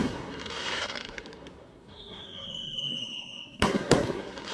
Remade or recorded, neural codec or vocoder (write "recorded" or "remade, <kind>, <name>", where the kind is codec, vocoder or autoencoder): remade, codec, SNAC